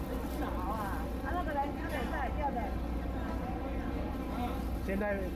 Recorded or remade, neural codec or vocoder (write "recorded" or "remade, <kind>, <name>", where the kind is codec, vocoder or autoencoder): recorded